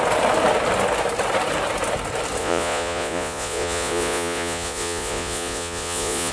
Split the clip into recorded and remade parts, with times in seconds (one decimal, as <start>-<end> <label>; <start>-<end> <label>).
0.0-2.4 recorded; 2.4-6.3 remade